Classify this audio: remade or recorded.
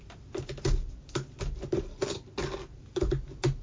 recorded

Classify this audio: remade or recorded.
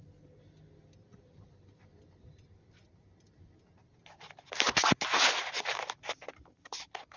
recorded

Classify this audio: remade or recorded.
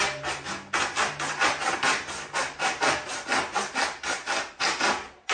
recorded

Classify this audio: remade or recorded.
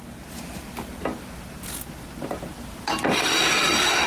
recorded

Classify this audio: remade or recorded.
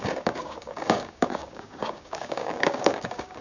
remade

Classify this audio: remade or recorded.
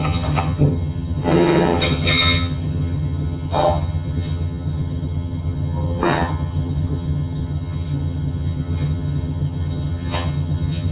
remade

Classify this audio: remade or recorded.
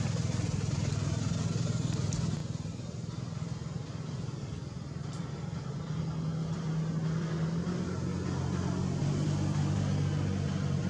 recorded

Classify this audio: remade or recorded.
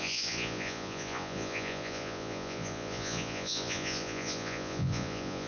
remade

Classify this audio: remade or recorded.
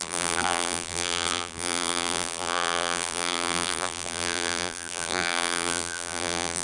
remade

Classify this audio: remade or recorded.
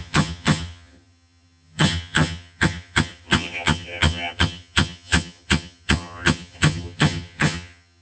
remade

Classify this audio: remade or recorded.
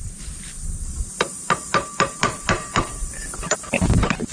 remade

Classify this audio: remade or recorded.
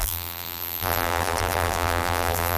remade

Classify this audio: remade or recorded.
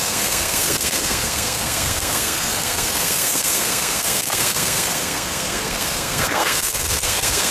remade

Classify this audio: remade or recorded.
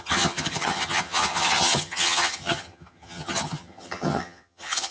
remade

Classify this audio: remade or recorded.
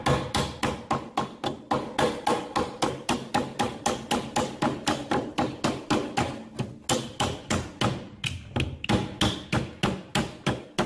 recorded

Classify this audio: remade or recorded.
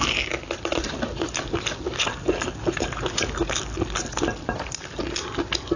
recorded